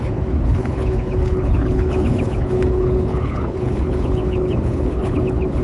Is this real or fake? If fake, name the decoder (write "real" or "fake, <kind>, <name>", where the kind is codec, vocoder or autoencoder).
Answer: fake, codec, HILCodec